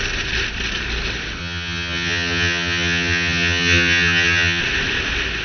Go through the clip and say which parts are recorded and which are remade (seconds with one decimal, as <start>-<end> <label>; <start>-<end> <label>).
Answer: 0.0-1.4 recorded; 1.4-4.6 remade; 4.6-5.4 recorded